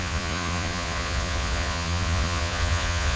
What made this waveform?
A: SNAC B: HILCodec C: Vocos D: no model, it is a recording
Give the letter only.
C